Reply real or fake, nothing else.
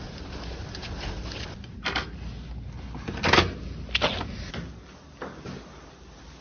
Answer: real